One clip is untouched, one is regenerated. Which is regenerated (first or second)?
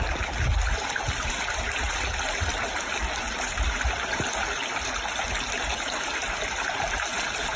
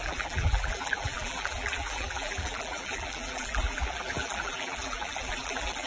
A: second